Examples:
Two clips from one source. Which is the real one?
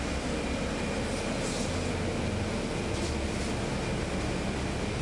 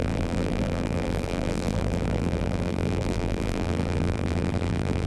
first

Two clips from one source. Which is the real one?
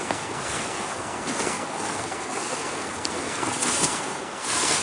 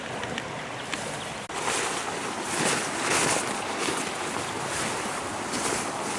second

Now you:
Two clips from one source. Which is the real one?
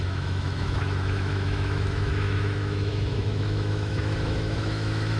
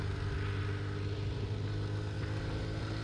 second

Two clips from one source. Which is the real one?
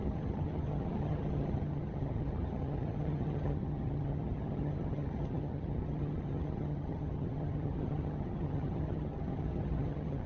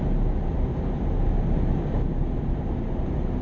second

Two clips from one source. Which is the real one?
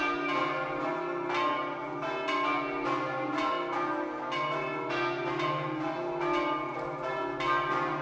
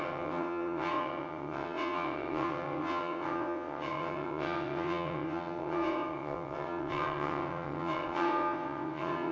first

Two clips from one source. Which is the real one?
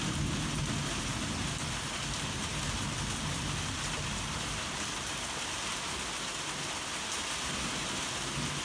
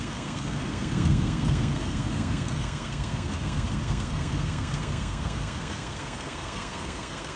first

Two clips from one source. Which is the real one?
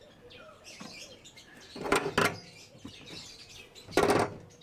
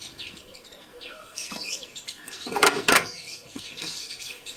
first